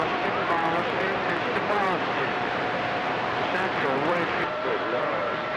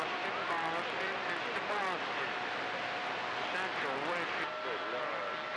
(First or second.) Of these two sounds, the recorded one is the second